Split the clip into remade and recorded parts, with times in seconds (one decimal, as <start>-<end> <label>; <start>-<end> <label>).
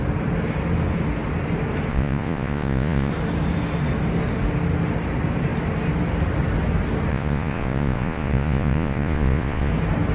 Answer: 0.0-1.9 recorded; 1.9-3.1 remade; 3.1-7.1 recorded; 7.1-9.7 remade; 9.7-10.1 recorded